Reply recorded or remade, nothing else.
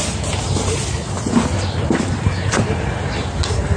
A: recorded